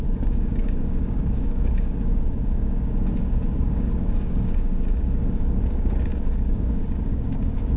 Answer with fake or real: fake